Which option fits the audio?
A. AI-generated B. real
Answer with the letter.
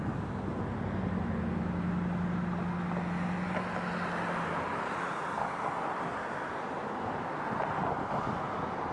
B